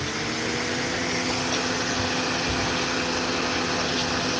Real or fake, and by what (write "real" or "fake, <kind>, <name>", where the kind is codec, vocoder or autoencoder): real